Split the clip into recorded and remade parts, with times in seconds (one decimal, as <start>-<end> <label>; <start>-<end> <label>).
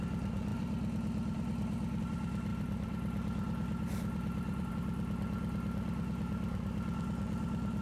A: 0.0-0.5 recorded; 0.5-2.0 remade; 2.0-2.5 recorded; 2.5-4.7 remade; 4.7-7.8 recorded